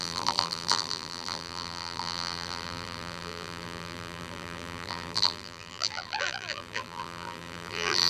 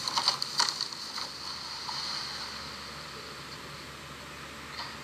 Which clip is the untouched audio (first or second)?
second